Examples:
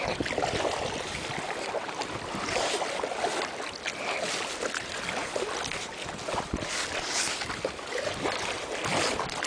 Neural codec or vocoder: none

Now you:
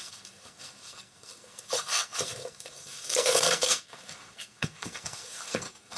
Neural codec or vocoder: codec, SNAC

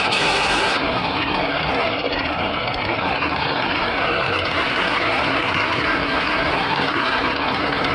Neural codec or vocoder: codec, SNAC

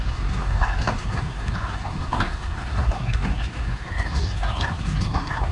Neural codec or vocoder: codec, SNAC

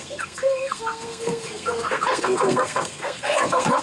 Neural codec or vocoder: codec, SNAC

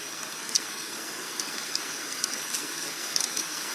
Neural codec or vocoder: codec, SNAC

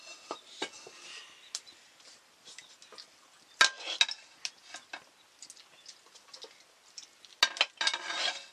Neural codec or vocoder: none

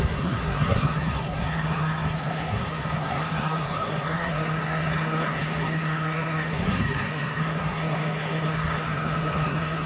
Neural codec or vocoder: codec, SNAC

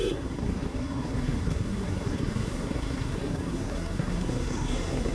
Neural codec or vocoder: codec, SNAC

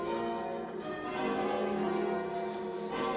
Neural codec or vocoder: none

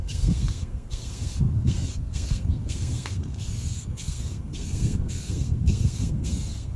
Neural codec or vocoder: codec, SNAC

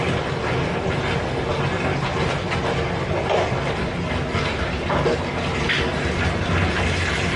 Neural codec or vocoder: none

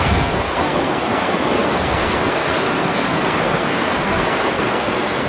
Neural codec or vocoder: codec, SNAC